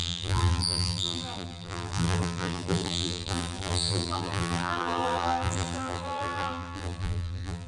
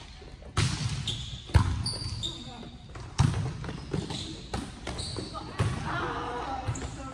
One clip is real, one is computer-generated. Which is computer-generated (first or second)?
first